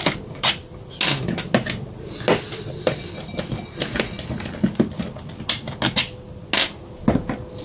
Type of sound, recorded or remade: recorded